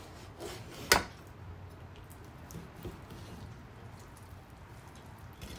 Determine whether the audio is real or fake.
real